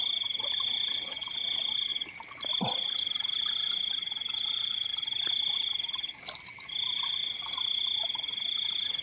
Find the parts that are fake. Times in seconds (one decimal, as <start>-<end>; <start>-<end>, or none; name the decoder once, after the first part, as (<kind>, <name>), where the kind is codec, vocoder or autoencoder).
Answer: none